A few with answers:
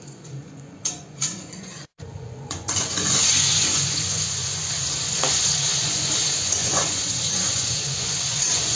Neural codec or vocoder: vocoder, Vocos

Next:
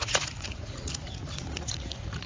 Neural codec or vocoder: vocoder, Vocos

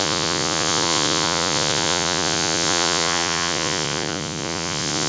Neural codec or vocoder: vocoder, Vocos